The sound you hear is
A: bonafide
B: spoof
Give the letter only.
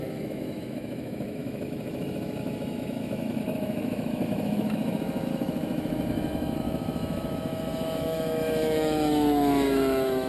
B